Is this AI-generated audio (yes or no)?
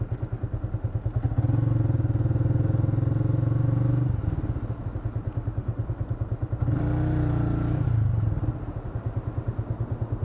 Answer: no